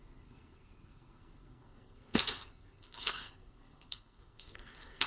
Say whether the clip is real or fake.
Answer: fake